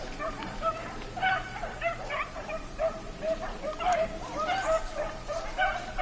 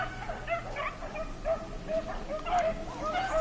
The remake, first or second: first